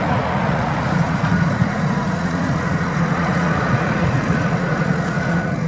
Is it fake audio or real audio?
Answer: fake